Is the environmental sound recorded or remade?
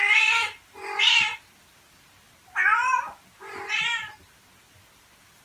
recorded